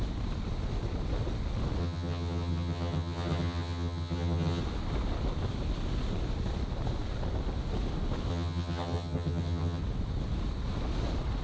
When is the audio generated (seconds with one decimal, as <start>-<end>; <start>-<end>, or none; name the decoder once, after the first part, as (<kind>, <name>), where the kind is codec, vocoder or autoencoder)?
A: 1.8-4.6 (vocoder, HiFi-GAN); 8.3-9.8